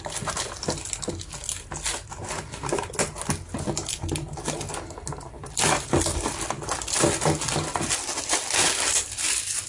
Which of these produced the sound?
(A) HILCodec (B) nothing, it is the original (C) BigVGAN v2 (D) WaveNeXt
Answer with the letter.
B